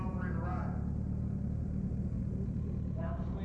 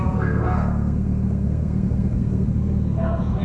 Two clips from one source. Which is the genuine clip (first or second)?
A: first